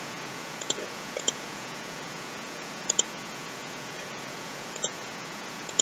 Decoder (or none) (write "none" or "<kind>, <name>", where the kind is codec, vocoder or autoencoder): vocoder, Vocos